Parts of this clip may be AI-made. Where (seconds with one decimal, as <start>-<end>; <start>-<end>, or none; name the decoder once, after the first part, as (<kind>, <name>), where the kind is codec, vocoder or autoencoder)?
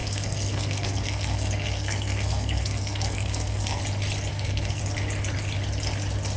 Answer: 0.0-3.8 (codec, SNAC); 4.3-4.8